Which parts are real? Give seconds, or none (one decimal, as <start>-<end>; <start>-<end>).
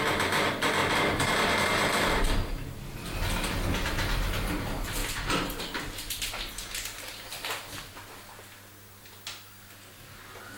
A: 0.0-0.8; 1.9-10.6